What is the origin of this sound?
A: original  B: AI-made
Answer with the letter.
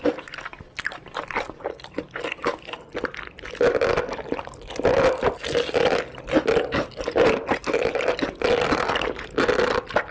A